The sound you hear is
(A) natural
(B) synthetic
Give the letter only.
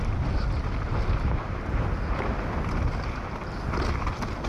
A